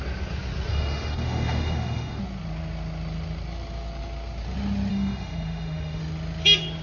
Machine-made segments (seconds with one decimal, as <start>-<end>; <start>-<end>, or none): 0.7-2.2; 4.9-6.0